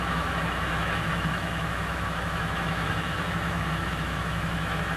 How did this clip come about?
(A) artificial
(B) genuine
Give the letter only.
A